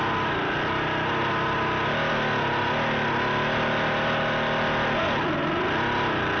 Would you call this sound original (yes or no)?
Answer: yes